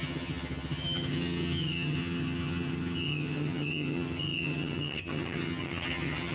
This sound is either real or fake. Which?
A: fake